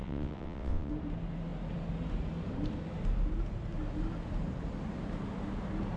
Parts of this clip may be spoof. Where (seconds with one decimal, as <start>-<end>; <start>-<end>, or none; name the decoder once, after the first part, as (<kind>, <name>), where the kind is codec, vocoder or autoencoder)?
0.0-0.9 (vocoder, WaveNeXt)